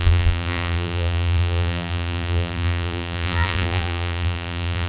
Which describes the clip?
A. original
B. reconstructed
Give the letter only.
B